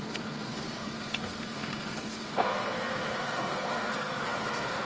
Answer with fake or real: fake